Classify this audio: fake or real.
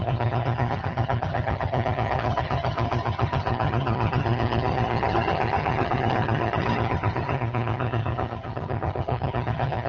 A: fake